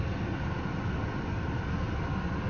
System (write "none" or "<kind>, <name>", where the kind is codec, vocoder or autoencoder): none